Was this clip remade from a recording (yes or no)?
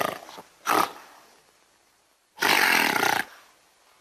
no